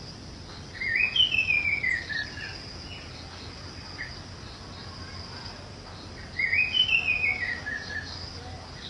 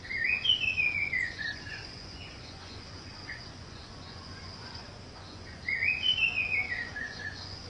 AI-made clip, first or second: second